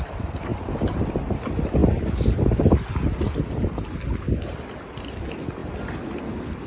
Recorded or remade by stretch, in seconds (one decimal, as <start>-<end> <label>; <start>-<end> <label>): 0.0-0.5 recorded; 0.5-1.1 remade; 1.1-1.8 recorded; 1.8-3.0 remade; 3.0-6.7 recorded